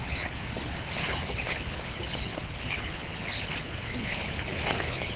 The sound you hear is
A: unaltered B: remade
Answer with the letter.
B